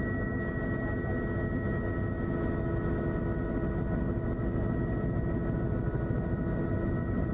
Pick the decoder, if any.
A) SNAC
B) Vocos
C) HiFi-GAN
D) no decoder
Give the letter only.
D